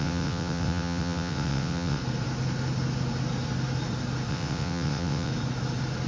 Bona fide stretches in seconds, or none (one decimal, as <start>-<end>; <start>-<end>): 2.0-4.3; 5.3-6.1